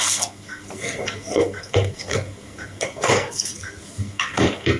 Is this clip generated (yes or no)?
yes